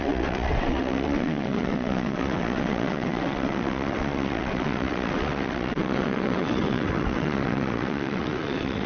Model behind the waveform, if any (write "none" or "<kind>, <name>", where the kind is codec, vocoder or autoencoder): vocoder, WaveNeXt